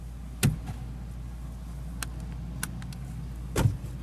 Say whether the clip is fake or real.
real